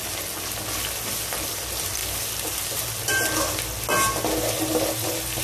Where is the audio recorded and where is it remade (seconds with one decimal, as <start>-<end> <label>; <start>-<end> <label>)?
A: 0.0-5.4 recorded